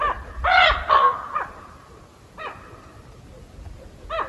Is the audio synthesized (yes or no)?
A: no